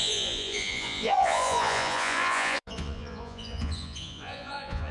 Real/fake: fake